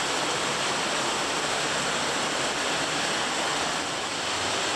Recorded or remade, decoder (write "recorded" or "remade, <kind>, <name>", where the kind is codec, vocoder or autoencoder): remade, vocoder, BigVGAN v2